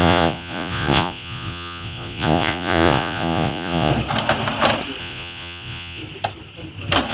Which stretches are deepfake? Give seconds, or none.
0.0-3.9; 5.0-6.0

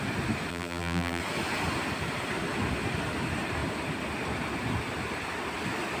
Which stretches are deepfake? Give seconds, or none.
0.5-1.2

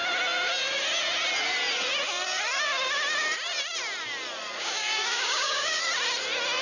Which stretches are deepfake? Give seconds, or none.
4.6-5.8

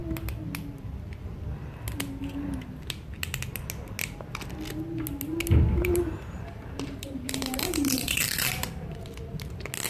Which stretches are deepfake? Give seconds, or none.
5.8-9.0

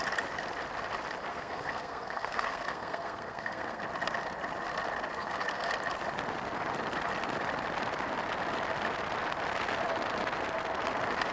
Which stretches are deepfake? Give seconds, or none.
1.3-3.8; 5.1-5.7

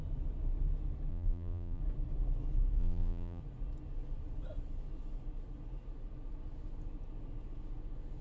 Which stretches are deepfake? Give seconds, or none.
1.1-1.8; 2.8-3.4